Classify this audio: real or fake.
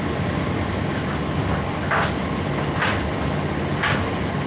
real